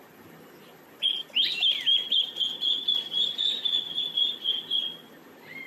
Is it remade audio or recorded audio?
remade